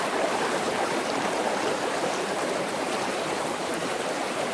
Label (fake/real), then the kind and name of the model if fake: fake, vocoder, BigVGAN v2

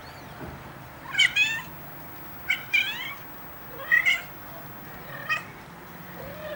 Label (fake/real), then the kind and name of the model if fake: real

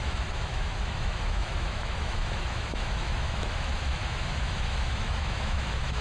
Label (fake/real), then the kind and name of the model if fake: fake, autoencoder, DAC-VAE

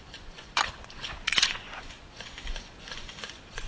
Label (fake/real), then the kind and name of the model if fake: fake, vocoder, Vocos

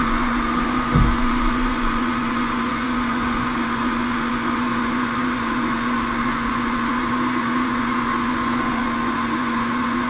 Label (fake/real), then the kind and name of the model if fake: fake, vocoder, Vocos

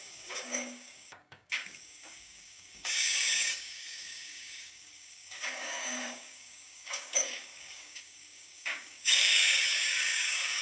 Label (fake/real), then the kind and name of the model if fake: fake, codec, DAC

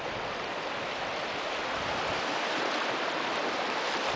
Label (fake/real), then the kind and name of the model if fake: real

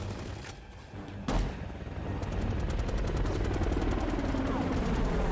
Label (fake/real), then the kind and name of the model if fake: real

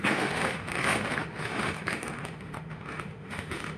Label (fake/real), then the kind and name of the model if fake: fake, autoencoder, DAC-VAE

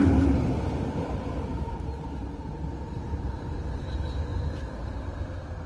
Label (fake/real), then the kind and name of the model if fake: real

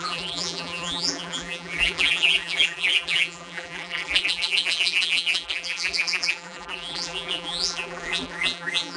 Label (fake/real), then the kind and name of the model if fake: fake, vocoder, BigVGAN v2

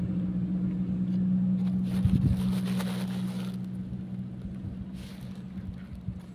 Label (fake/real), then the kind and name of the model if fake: real